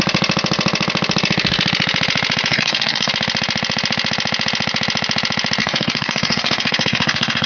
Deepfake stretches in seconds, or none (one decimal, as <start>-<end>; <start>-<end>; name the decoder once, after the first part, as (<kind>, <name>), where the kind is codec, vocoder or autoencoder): 2.5-3.1 (codec, DAC); 5.6-7.5